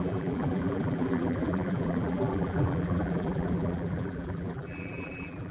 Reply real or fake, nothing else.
fake